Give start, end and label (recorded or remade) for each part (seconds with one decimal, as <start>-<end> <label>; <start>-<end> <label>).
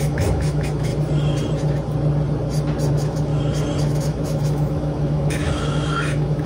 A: 0.0-0.9 remade; 0.9-2.9 recorded; 2.9-3.3 remade; 3.3-3.8 recorded; 3.8-6.5 remade